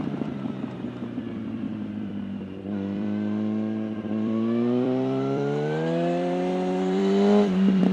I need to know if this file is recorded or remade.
remade